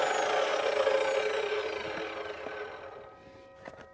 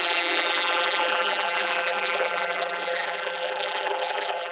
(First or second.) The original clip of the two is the first